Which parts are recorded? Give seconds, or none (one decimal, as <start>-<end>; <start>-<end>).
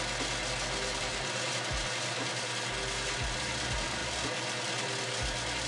0.0-1.1; 1.7-5.7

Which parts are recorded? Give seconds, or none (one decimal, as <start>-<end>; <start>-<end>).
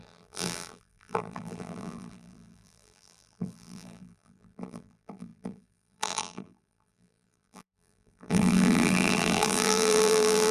none